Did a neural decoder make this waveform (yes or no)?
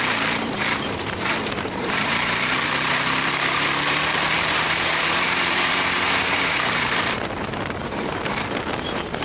yes